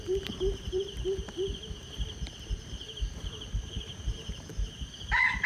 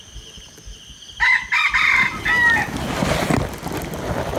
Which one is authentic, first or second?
second